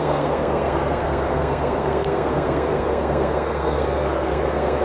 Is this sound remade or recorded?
remade